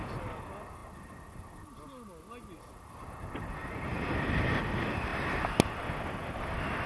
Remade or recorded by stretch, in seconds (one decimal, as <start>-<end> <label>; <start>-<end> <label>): 0.0-6.9 recorded